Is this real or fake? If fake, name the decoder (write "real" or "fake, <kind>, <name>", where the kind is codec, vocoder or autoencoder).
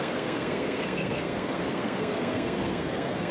fake, codec, SNAC